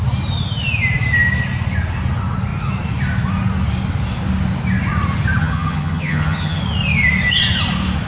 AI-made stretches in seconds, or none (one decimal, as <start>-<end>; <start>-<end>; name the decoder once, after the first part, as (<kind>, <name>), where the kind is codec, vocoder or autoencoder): 5.4-6.6 (vocoder, HiFi-GAN)